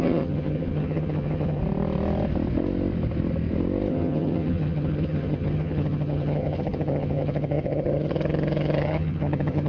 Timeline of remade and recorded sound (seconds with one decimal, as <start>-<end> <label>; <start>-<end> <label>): 0.0-1.6 remade; 1.6-3.9 recorded; 3.9-9.7 remade